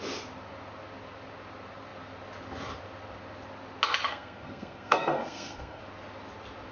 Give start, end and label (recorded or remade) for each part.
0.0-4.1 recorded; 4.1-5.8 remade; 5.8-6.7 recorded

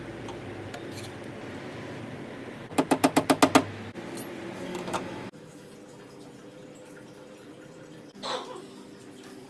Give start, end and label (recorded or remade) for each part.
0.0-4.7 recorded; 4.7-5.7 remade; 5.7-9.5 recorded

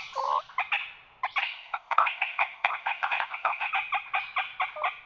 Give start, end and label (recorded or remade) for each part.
0.0-1.4 recorded; 1.4-3.7 remade; 3.7-5.1 recorded